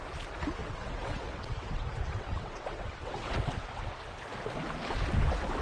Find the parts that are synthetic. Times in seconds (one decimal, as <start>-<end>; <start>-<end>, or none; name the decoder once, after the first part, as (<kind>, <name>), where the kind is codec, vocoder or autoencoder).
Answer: 0.6-4.0 (vocoder, WaveNeXt)